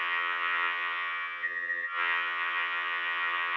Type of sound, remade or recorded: remade